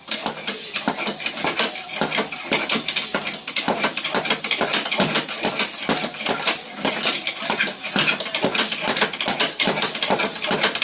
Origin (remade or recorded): recorded